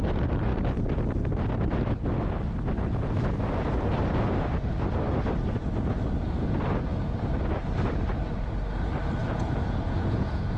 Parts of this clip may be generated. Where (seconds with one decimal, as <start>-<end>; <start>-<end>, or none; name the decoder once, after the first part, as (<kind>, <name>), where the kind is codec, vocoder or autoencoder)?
9.2-10.6 (vocoder, Vocos)